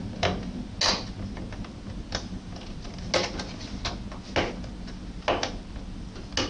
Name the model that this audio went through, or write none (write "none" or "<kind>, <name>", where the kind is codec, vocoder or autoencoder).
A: none